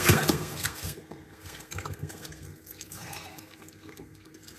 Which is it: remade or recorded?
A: remade